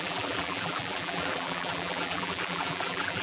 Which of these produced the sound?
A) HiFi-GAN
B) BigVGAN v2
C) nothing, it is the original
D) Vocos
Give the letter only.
B